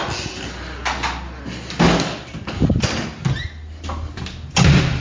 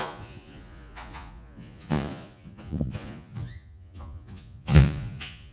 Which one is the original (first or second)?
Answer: first